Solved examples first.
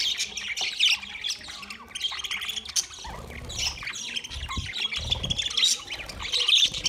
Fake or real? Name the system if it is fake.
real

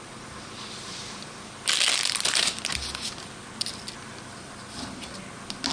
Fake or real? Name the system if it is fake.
real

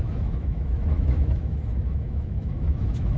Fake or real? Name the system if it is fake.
fake, autoencoder, DAC-VAE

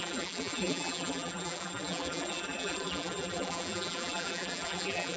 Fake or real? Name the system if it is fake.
fake, vocoder, BigVGAN v2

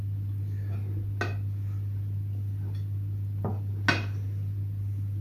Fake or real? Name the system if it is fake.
real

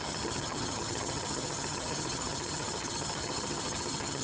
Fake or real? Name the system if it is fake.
fake, vocoder, HiFi-GAN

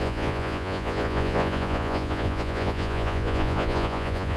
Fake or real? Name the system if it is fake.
fake, vocoder, Vocos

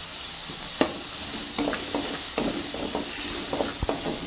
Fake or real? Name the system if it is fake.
real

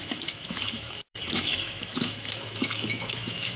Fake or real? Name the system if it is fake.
fake, autoencoder, DAC-VAE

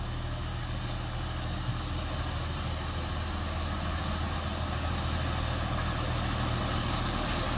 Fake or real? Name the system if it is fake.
real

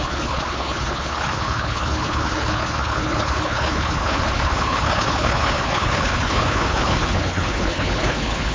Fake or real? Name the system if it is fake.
fake, codec, HILCodec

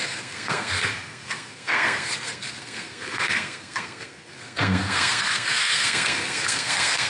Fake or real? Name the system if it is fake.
fake, codec, SNAC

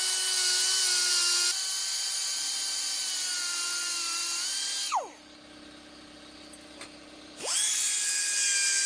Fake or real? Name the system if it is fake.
real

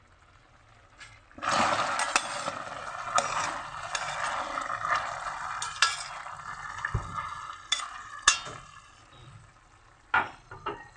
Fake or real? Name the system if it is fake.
real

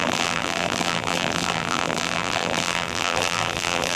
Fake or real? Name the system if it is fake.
fake, vocoder, BigVGAN v2